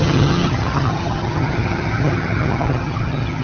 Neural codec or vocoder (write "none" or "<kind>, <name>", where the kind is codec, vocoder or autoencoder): vocoder, HiFi-GAN